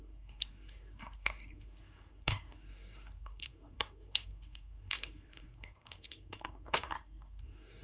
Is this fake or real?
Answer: fake